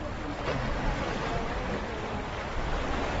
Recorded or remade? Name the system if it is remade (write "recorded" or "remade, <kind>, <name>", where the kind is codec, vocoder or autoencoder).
recorded